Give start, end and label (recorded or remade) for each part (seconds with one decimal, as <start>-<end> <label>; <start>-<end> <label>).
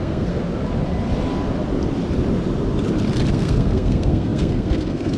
0.0-0.4 remade; 0.4-3.3 recorded; 3.3-5.2 remade